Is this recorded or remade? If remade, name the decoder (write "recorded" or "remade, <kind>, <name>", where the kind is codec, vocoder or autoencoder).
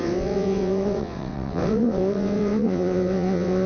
remade, vocoder, WaveNeXt